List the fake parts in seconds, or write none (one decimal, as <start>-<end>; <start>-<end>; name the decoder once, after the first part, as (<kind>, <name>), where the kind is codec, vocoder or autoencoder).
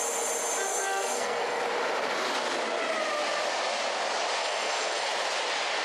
0.7-1.6 (codec, SNAC); 4.4-5.1